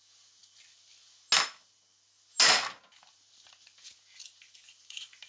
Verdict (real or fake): real